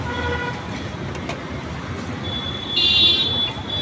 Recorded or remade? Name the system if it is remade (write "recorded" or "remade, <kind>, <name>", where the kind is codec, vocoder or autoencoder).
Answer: recorded